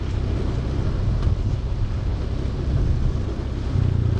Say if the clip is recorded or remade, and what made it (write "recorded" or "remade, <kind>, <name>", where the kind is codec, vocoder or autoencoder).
recorded